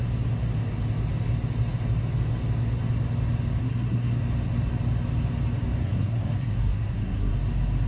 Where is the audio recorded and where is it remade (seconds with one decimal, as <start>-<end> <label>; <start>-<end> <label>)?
0.0-3.6 recorded; 3.6-4.2 remade; 4.2-5.8 recorded; 5.8-7.3 remade; 7.3-7.9 recorded